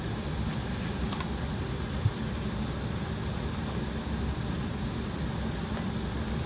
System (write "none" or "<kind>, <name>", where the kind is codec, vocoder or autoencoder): none